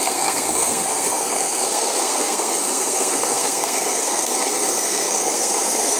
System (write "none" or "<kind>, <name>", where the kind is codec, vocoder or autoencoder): codec, SNAC